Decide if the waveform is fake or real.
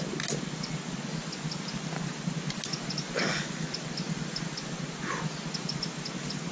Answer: real